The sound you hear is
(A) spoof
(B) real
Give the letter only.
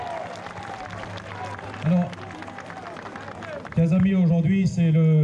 B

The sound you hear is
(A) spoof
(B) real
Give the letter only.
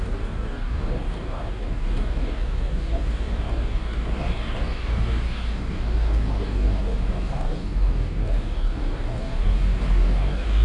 A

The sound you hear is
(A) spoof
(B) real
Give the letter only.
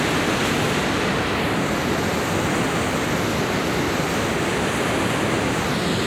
B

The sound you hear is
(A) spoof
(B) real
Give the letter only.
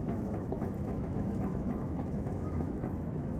A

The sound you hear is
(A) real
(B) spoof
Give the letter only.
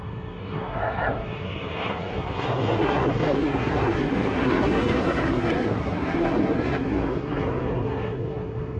B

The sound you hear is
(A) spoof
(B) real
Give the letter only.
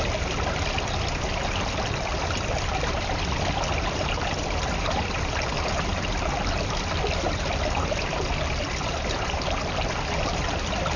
B